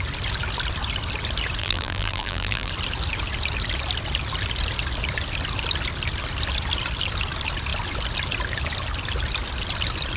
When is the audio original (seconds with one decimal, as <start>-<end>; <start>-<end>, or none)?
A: 0.0-1.6; 2.7-10.2